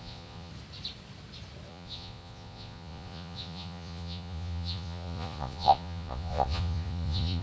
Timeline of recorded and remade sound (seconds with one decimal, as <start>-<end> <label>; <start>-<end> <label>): 0.0-0.5 remade; 0.5-1.7 recorded; 1.7-7.4 remade